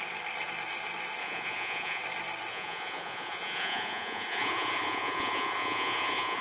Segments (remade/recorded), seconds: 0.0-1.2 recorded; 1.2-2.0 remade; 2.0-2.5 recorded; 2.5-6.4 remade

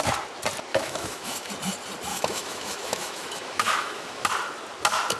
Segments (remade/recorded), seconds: 0.0-0.7 recorded; 0.7-1.5 remade; 1.5-2.1 recorded; 2.1-4.3 remade; 4.3-5.2 recorded